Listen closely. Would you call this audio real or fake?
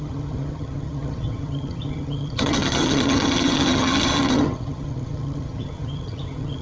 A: fake